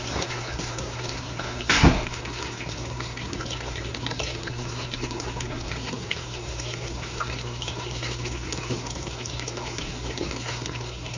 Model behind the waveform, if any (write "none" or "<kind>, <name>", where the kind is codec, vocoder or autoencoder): codec, SNAC